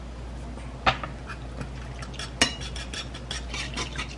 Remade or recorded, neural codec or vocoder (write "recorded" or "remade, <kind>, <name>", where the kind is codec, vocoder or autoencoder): recorded